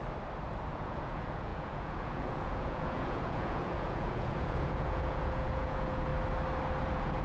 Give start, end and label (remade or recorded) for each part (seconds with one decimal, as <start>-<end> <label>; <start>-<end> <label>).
0.0-0.7 recorded; 0.7-6.1 remade; 6.1-6.8 recorded; 6.8-7.2 remade